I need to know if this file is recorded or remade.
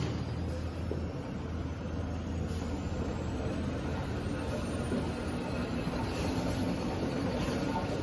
recorded